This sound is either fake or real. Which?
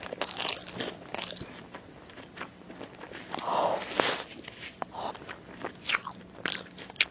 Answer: real